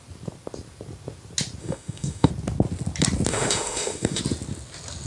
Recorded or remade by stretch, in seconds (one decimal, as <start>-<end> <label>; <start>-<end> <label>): 0.0-1.6 recorded; 1.6-2.3 remade; 2.3-3.3 recorded; 3.3-4.2 remade; 4.2-5.1 recorded